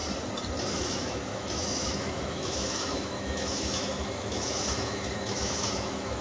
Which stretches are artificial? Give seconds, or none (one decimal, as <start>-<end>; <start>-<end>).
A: 0.7-6.2